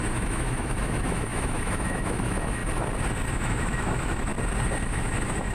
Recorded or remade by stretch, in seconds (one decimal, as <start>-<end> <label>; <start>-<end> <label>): 0.0-2.6 remade; 2.6-3.3 recorded; 3.3-4.3 remade; 4.3-4.8 recorded; 4.8-5.5 remade